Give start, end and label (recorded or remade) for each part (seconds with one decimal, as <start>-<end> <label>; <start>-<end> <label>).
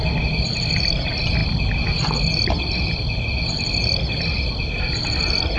0.0-5.6 recorded